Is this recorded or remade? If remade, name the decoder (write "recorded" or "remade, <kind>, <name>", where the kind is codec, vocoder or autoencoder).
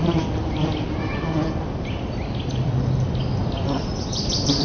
recorded